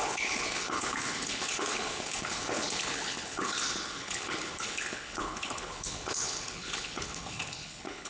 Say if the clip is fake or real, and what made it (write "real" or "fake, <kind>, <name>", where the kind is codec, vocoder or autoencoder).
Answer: fake, codec, HILCodec